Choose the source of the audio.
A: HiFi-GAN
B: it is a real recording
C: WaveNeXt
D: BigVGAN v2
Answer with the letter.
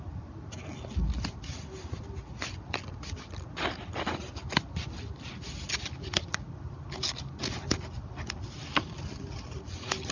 B